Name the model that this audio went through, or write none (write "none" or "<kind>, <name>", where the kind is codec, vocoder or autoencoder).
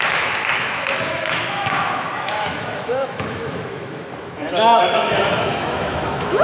autoencoder, DAC-VAE